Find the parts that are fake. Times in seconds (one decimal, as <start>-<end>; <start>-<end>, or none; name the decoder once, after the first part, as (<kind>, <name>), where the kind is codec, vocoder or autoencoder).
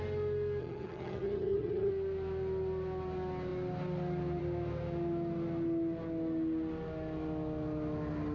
0.6-1.9 (vocoder, HiFi-GAN)